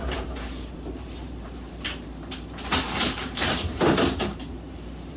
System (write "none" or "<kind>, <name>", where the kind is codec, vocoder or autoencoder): vocoder, BigVGAN v2